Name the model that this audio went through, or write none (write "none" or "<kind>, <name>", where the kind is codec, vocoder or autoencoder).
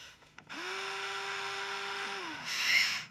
autoencoder, DAC-VAE